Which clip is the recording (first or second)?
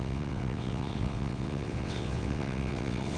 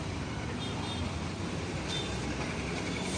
second